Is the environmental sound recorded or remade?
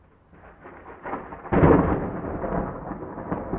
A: recorded